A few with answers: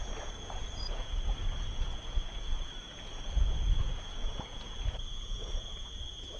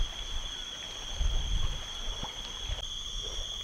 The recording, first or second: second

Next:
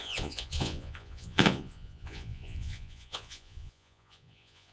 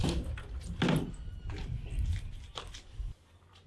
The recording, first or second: second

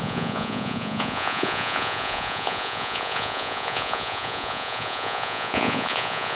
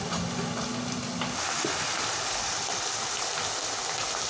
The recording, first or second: second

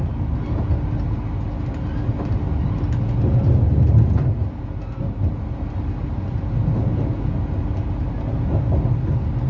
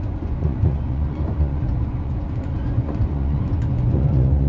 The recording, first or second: first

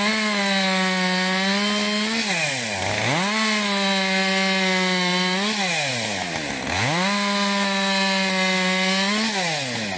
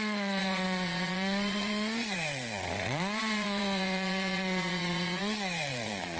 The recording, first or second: first